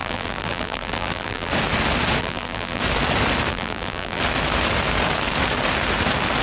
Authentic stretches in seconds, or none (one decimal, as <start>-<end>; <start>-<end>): 1.5-2.2; 2.8-3.5; 4.2-6.4